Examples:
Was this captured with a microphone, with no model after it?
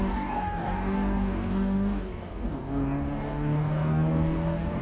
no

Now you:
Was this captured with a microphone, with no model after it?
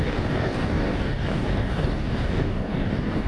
no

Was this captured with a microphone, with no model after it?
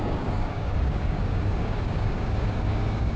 no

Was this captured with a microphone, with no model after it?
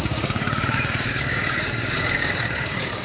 no